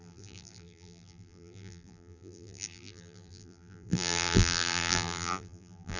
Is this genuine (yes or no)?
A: no